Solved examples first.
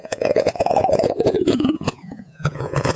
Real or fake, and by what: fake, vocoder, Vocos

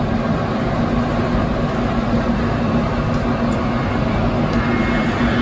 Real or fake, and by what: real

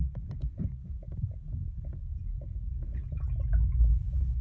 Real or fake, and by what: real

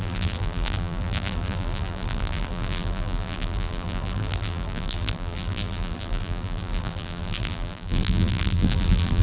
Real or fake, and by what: fake, vocoder, BigVGAN v2